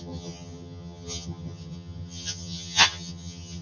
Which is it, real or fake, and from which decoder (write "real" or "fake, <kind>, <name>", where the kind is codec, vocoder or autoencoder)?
fake, vocoder, HiFi-GAN